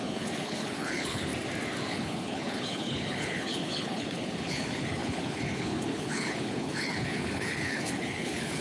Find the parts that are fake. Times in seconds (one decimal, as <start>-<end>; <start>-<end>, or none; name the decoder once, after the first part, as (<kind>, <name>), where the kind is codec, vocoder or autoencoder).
0.0-1.3 (codec, HILCodec); 1.9-8.6